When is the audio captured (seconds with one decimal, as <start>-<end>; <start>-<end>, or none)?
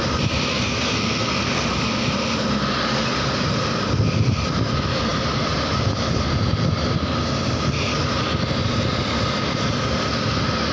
0.0-0.5; 1.2-10.7